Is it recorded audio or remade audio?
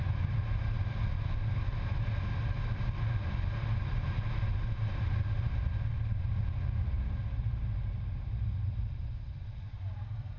recorded